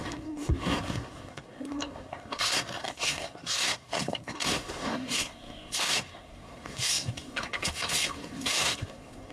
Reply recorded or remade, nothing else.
remade